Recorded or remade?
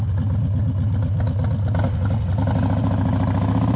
recorded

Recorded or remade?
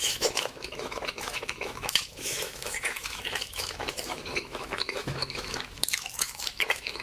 remade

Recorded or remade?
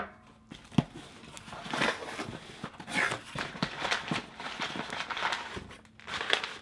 recorded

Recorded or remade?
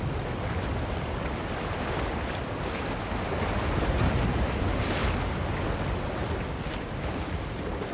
recorded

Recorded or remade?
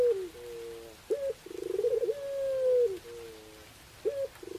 recorded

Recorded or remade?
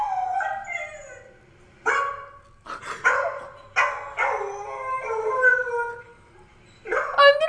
recorded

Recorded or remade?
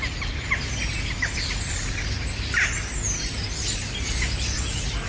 recorded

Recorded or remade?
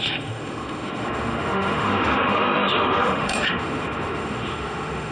remade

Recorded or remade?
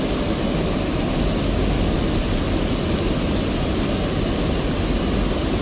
recorded